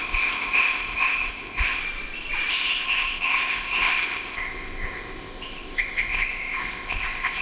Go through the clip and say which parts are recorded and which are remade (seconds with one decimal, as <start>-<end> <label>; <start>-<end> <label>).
0.0-1.8 remade; 1.8-2.5 recorded; 2.5-7.4 remade

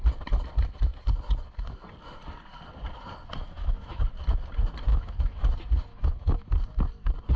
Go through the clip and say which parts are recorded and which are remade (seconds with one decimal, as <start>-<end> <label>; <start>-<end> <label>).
0.0-3.4 recorded; 3.4-4.0 remade; 4.0-4.9 recorded; 4.9-5.4 remade; 5.4-5.9 recorded; 5.9-6.5 remade; 6.5-7.4 recorded

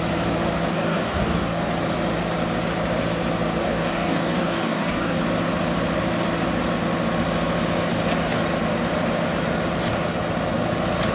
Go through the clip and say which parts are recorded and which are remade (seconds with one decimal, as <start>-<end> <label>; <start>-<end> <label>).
0.0-0.7 recorded; 0.7-1.6 remade; 1.6-3.6 recorded; 3.6-5.2 remade; 5.2-11.1 recorded